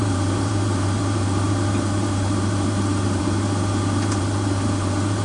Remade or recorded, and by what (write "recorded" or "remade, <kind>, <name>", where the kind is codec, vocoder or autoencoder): remade, vocoder, BigVGAN v2